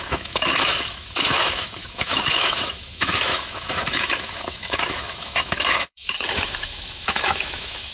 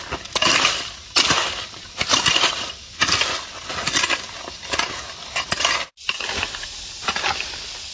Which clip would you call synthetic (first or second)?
first